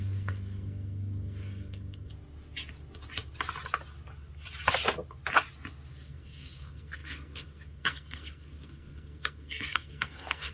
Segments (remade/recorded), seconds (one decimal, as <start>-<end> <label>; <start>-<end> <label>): 0.0-2.1 remade; 2.1-5.9 recorded; 5.9-10.5 remade